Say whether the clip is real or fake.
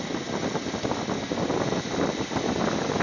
real